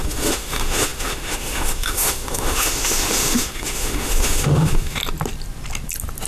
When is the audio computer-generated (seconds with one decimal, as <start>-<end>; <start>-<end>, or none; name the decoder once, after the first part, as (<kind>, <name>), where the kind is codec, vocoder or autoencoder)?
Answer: 0.0-5.0 (autoencoder, DAC-VAE)